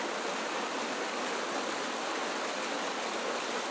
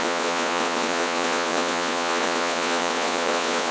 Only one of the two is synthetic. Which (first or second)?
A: second